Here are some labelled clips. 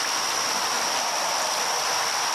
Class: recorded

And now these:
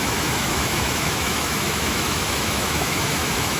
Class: remade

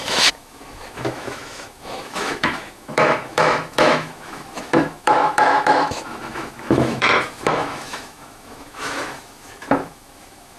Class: remade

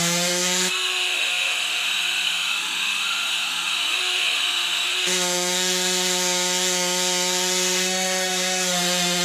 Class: remade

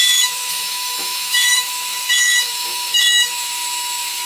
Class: remade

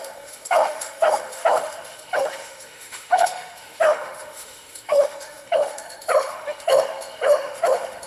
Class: remade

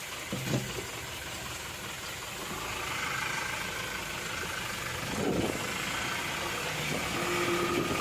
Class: recorded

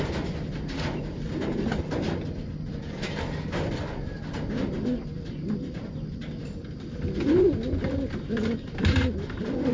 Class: recorded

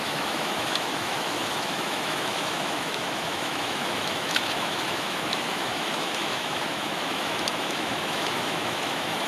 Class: remade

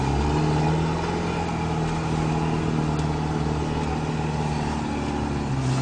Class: recorded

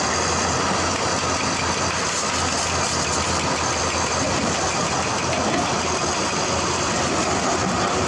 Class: recorded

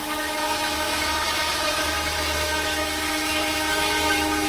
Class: remade